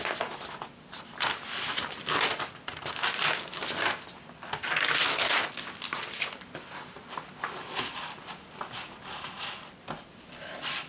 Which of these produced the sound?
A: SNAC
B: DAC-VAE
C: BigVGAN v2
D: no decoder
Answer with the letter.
D